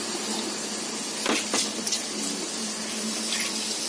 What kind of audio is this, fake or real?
real